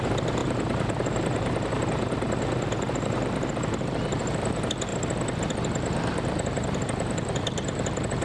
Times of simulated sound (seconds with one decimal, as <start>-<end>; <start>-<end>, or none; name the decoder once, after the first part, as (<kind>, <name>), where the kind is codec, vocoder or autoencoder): 0.0-4.9 (vocoder, BigVGAN v2); 5.5-8.2

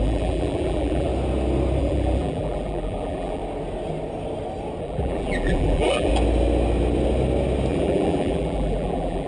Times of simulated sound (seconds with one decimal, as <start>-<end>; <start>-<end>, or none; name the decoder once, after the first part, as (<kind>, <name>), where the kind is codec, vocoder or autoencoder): 0.0-1.1 (vocoder, BigVGAN v2); 1.8-3.4; 4.8-6.1; 7.7-9.3

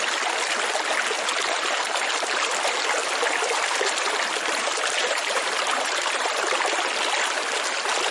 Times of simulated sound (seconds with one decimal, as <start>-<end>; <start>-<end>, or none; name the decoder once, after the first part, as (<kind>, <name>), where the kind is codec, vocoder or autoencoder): 5.0-6.2 (vocoder, BigVGAN v2)

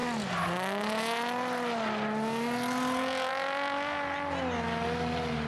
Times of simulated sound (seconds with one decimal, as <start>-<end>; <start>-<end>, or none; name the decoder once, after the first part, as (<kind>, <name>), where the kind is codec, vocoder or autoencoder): none

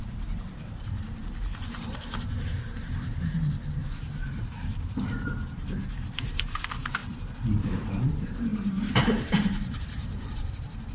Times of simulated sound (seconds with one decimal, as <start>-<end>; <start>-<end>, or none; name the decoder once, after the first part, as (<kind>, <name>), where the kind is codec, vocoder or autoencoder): 0.0-7.0 (vocoder, BigVGAN v2); 7.6-10.9

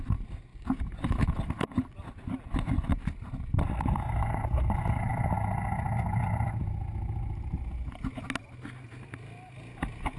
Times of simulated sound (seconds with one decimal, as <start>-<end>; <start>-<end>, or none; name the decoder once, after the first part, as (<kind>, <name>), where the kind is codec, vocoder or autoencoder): none